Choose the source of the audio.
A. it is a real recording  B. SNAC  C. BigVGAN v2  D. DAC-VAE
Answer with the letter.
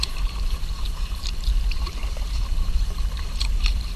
C